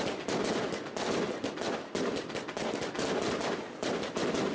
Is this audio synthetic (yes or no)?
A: no